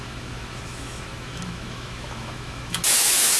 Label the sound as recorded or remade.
remade